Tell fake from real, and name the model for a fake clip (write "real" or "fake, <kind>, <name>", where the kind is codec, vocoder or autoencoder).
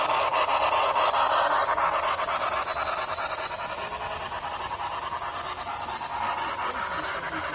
real